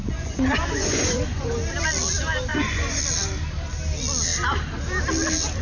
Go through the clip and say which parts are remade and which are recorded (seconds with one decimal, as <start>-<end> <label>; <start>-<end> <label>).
0.0-1.5 remade; 1.5-2.5 recorded; 2.5-3.0 remade; 3.0-5.6 recorded